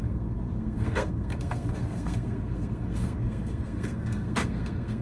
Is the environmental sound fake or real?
fake